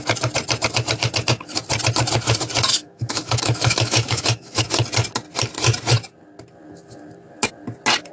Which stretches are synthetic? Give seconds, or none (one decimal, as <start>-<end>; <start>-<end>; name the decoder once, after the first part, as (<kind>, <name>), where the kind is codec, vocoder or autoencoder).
2.7-4.6 (autoencoder, DAC-VAE)